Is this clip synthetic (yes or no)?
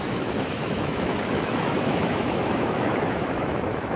yes